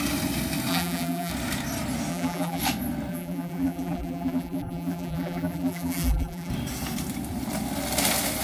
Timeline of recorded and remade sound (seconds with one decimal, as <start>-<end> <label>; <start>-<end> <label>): 0.0-0.7 recorded; 0.7-1.3 remade; 1.3-2.1 recorded; 2.1-2.6 remade; 2.6-3.1 recorded; 3.1-6.5 remade; 6.5-8.4 recorded

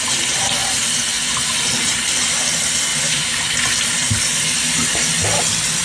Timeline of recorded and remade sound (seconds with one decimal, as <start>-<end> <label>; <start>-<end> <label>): 0.0-5.8 recorded

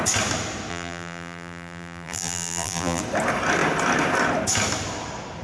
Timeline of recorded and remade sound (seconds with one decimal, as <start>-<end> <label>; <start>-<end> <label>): 0.0-0.7 recorded; 0.7-3.0 remade; 3.0-5.4 recorded

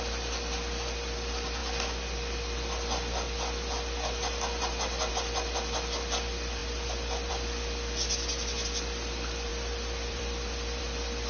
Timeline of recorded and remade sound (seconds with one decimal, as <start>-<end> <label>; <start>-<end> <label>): 0.0-9.5 recorded; 9.5-10.8 remade; 10.8-11.3 recorded

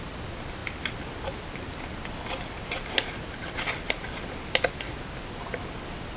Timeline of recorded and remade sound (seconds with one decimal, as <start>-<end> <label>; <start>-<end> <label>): 0.0-0.6 recorded; 0.6-4.3 remade; 4.3-6.2 recorded